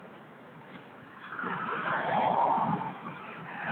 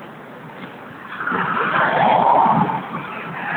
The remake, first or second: first